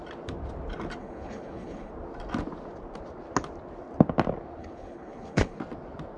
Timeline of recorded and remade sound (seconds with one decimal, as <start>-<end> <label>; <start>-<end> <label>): 0.0-1.0 recorded; 1.0-1.9 remade; 1.9-4.6 recorded; 4.6-5.6 remade; 5.6-6.2 recorded